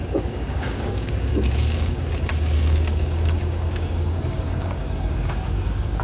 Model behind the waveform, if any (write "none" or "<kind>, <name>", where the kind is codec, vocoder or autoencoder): codec, DAC